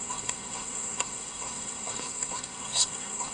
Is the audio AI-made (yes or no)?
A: yes